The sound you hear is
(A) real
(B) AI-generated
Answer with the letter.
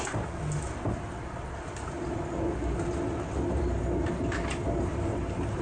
A